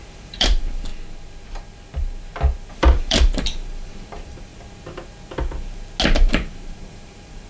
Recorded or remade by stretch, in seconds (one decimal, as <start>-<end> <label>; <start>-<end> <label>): 0.0-0.9 remade; 0.9-2.7 recorded; 2.7-4.5 remade; 4.5-6.3 recorded; 6.3-7.5 remade